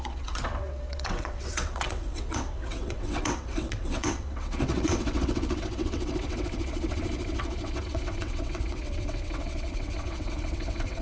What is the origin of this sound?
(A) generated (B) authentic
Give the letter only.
A